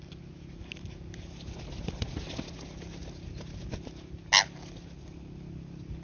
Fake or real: real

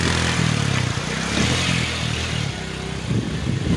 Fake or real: real